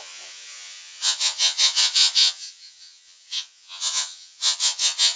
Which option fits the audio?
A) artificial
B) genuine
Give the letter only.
A